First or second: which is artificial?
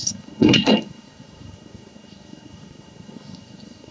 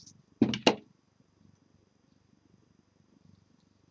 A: first